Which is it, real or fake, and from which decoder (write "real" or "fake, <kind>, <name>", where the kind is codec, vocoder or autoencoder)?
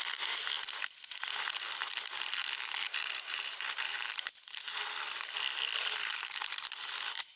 real